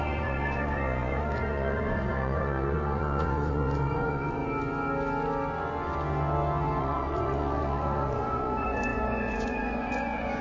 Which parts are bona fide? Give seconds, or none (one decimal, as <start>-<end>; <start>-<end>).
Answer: 4.4-6.8